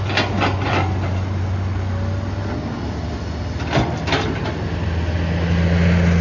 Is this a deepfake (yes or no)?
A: no